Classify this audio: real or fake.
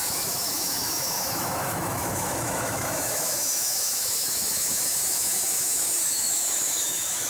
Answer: fake